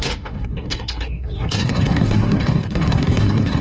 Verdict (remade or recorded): remade